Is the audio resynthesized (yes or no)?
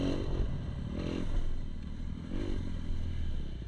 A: no